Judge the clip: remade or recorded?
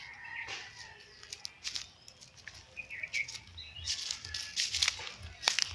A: recorded